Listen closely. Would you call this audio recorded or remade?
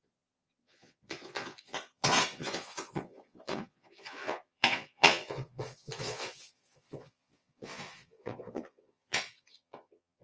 remade